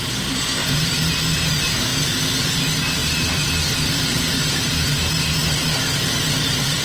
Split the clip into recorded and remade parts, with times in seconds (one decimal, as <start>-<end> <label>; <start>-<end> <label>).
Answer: 0.0-0.6 recorded; 0.6-1.2 remade; 1.2-3.0 recorded; 3.0-5.0 remade; 5.0-5.4 recorded; 5.4-6.8 remade

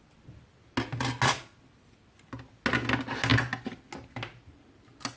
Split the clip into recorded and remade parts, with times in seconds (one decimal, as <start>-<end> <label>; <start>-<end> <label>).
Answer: 0.0-5.2 recorded